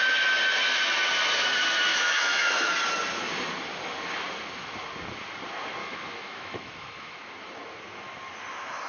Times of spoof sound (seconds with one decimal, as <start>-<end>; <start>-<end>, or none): 1.9-2.7; 5.8-7.2